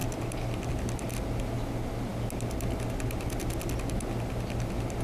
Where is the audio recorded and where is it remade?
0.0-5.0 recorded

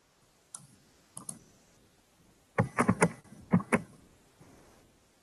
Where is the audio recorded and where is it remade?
0.0-5.2 recorded

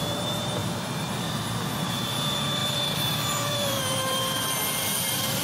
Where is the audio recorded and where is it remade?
0.0-5.4 remade

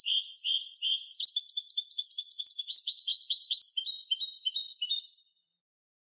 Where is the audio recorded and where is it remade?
0.0-3.1 remade; 3.1-4.9 recorded; 4.9-6.1 remade

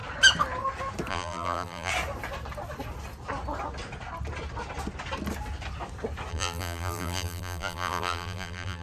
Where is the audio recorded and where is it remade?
0.0-1.1 recorded; 1.1-1.9 remade; 1.9-6.3 recorded; 6.3-8.8 remade

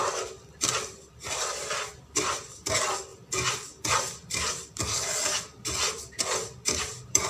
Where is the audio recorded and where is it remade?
0.0-3.1 remade; 3.1-3.8 recorded; 3.8-7.3 remade

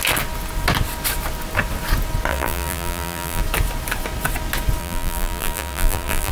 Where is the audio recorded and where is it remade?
0.0-2.3 recorded; 2.3-3.4 remade; 3.4-4.8 recorded; 4.8-6.3 remade